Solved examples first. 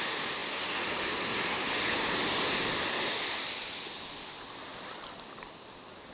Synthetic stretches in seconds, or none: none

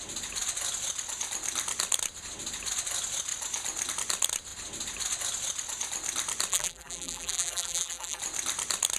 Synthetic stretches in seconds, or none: 6.5-8.2 (vocoder, BigVGAN v2)

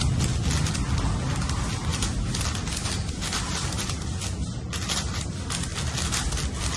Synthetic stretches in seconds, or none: 1.9-3.9 (vocoder, BigVGAN v2)

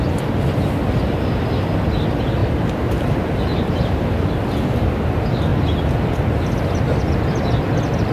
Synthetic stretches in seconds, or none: 2.4-4.3 (vocoder, BigVGAN v2)

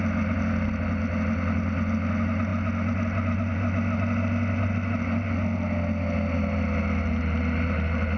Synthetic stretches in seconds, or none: none

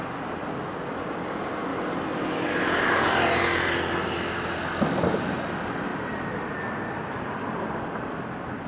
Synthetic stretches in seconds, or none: 1.7-3.4 (vocoder, BigVGAN v2)

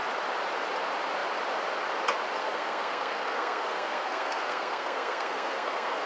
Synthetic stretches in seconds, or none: 2.4-6.1 (codec, SNAC)